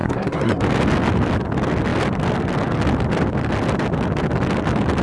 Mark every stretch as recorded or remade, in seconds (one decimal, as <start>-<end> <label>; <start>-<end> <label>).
0.0-0.6 remade; 0.6-5.0 recorded

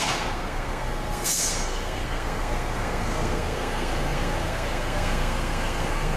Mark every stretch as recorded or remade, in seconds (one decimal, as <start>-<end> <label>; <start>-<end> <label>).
0.0-6.2 remade

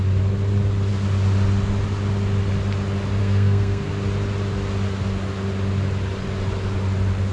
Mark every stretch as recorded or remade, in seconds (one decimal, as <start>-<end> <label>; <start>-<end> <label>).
0.0-3.2 recorded; 3.2-3.9 remade; 3.9-7.3 recorded

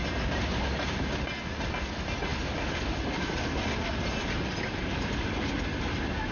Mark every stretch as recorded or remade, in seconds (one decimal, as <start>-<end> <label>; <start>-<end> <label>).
0.0-6.3 recorded

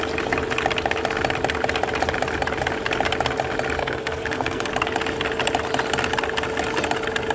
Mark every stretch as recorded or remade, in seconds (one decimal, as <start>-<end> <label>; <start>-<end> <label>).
0.0-3.8 recorded; 3.8-4.7 remade; 4.7-7.3 recorded